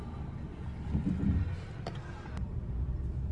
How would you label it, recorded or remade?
recorded